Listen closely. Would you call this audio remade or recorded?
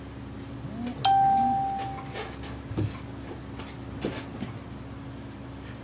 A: recorded